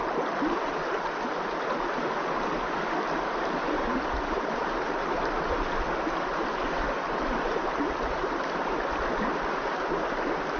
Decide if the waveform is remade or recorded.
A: recorded